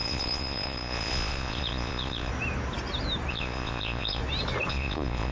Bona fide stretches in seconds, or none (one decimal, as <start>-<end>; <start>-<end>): 2.3-3.3; 4.2-4.7